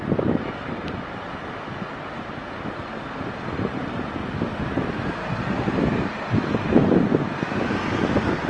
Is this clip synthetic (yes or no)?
no